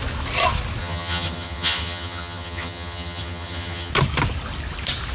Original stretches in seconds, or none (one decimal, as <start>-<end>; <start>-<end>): 0.0-0.8; 3.9-5.1

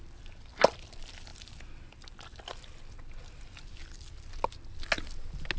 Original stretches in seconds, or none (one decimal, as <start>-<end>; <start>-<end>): 0.0-5.6

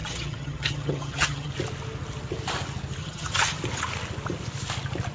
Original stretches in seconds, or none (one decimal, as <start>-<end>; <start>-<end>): 1.5-3.0; 3.6-5.1

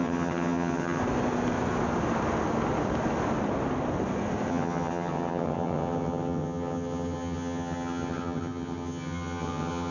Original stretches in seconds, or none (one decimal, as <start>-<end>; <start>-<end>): 1.0-4.5

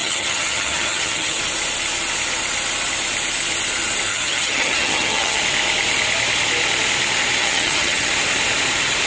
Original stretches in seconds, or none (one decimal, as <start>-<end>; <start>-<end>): 1.4-4.1; 5.4-7.4; 8.1-9.1

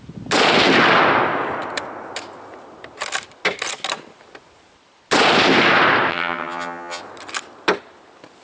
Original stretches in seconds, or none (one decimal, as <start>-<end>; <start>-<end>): 0.0-6.1; 7.0-8.4

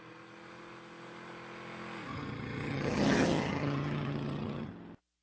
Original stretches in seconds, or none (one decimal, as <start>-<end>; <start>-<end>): 0.0-2.1; 4.7-5.2